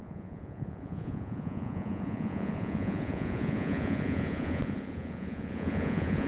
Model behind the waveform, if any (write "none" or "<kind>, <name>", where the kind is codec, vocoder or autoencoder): vocoder, Vocos